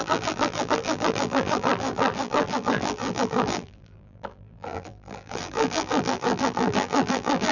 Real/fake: fake